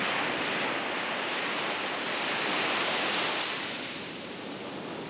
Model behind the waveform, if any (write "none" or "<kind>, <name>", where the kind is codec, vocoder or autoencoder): none